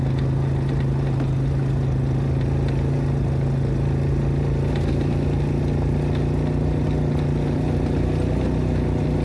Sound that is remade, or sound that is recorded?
recorded